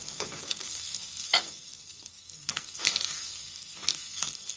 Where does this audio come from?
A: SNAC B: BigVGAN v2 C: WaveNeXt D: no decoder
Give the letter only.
A